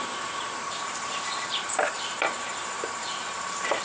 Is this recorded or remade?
remade